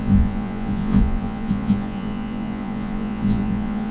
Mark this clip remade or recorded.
remade